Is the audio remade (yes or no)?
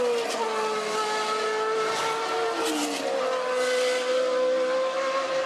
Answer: no